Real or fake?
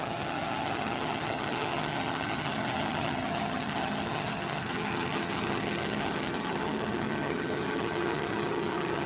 fake